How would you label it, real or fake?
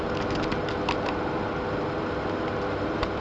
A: real